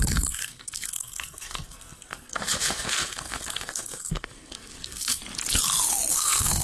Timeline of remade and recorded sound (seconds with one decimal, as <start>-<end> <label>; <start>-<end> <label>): 0.0-5.2 remade; 5.2-6.1 recorded; 6.1-6.6 remade